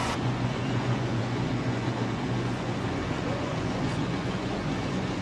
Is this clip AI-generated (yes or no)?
yes